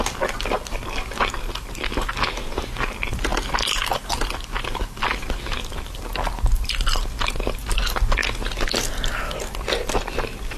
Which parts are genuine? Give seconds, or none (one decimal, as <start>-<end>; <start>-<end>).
0.0-10.6